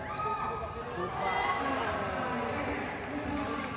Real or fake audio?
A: real